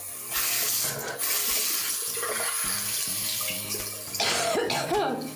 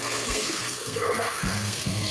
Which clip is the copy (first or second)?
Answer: second